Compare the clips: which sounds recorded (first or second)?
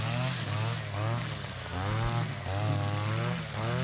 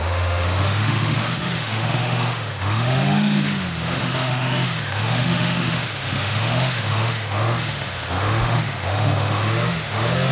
first